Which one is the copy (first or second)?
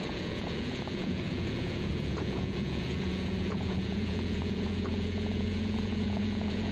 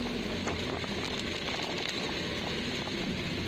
first